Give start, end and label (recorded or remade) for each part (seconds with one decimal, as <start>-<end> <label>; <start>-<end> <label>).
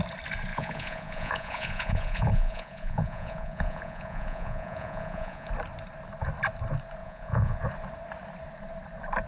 0.0-0.5 recorded; 0.5-5.5 remade; 5.5-7.0 recorded; 7.0-7.6 remade; 7.6-9.3 recorded